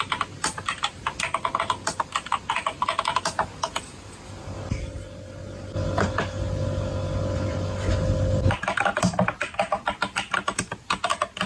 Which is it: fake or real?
real